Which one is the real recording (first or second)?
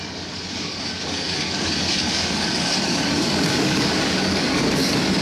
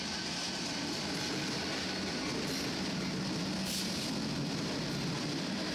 second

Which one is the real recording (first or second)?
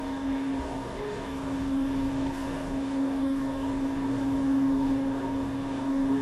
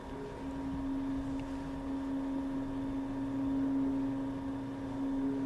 second